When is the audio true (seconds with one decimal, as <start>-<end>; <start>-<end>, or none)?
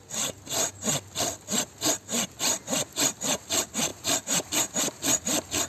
0.0-5.7